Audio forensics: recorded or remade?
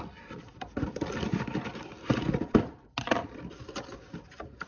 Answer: recorded